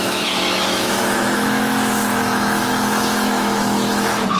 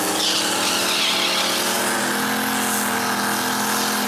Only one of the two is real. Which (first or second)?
second